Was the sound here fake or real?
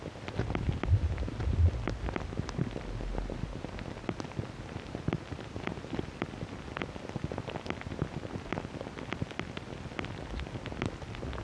real